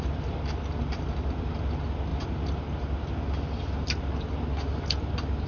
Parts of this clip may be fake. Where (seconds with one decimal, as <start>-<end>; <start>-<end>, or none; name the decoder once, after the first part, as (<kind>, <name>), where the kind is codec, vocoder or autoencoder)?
none